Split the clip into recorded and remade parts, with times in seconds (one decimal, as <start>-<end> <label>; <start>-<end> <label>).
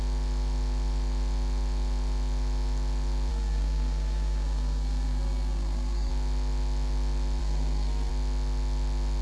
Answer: 0.0-3.3 recorded; 3.3-6.1 remade; 6.1-7.4 recorded; 7.4-8.1 remade; 8.1-9.2 recorded